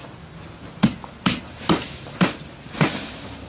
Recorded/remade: remade